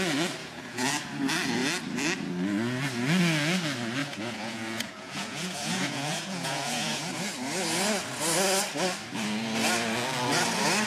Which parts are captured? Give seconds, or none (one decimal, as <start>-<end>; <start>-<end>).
0.0-0.4; 0.9-4.0; 7.2-10.9